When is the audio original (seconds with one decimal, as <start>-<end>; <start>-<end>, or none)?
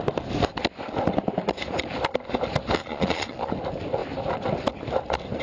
0.0-2.8; 3.5-5.4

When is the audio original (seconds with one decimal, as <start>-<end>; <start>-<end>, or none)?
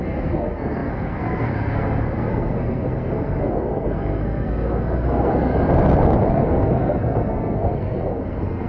5.5-6.3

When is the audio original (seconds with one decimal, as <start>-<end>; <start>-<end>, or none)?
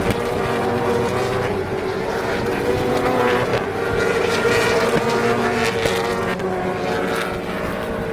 0.0-8.1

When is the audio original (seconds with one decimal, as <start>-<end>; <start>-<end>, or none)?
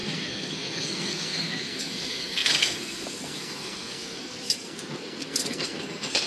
none